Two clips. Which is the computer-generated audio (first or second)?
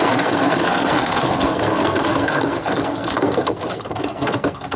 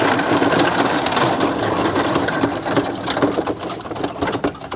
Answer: first